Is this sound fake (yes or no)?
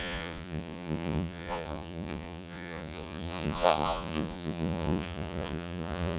yes